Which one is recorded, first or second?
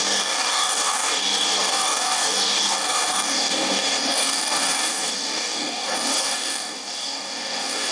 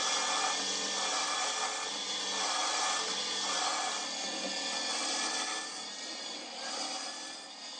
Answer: second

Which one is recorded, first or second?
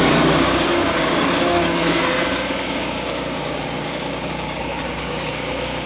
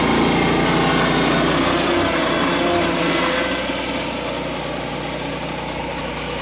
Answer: second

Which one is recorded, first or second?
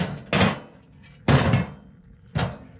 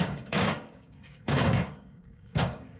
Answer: first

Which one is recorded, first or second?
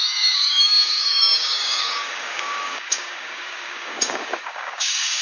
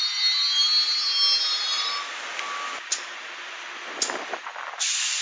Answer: second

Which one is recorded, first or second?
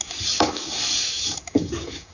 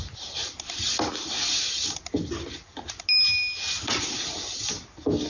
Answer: second